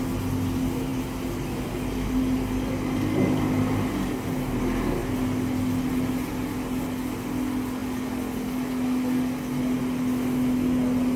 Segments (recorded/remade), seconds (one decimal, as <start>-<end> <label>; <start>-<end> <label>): 0.0-11.2 recorded